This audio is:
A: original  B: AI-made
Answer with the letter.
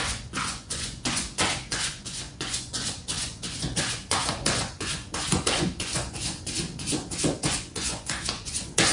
B